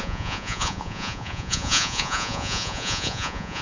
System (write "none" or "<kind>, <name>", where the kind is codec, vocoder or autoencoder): vocoder, Vocos